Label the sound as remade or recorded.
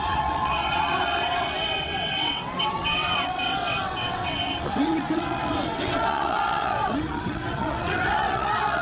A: remade